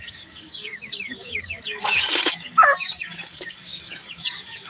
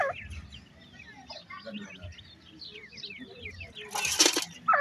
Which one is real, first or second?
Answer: second